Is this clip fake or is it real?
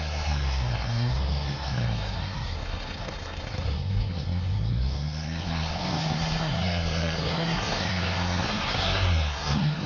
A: fake